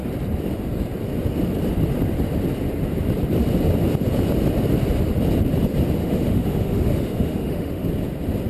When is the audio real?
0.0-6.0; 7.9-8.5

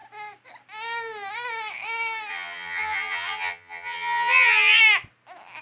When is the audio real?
0.0-2.3; 4.8-5.6

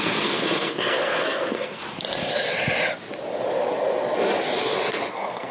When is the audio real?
1.8-5.1

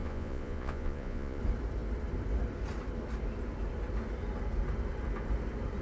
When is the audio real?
1.4-5.8

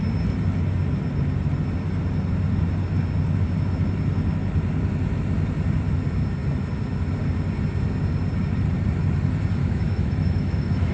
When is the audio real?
0.0-9.6

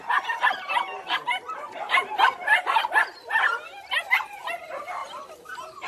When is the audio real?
0.0-5.9

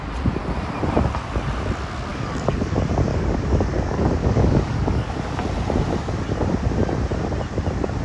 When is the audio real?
0.0-2.1; 2.7-3.1; 5.1-8.0

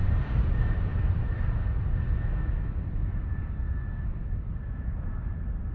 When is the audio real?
0.9-4.3